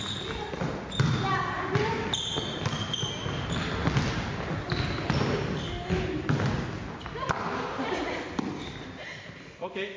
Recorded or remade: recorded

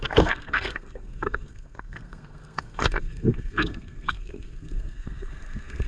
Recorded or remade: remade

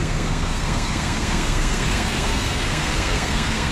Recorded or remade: remade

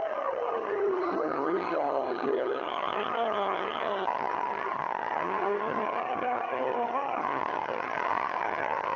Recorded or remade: remade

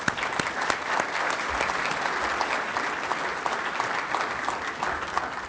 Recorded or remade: recorded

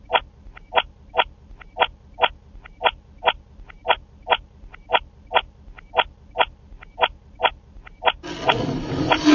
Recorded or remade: recorded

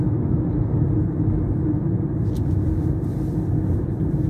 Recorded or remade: recorded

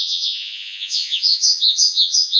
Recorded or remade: remade